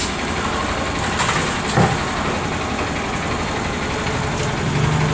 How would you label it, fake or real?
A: real